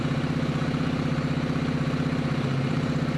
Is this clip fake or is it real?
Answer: real